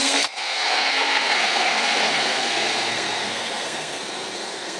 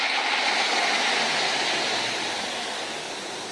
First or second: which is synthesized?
first